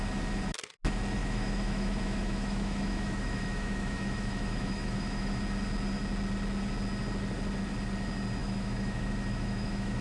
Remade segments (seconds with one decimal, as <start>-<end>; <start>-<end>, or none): 1.2-5.3; 8.4-10.0